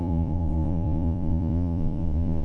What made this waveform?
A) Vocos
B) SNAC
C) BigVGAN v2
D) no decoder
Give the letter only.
A